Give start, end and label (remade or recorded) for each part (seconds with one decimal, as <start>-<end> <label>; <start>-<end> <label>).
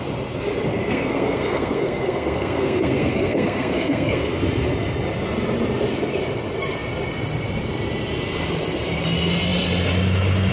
0.0-0.7 recorded; 0.7-4.3 remade; 4.3-10.5 recorded